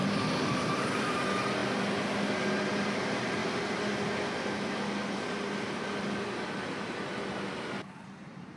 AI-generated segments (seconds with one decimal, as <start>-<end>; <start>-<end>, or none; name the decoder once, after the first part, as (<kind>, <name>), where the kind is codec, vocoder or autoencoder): 0.6-1.6 (vocoder, BigVGAN v2); 2.8-3.4; 8.2-8.6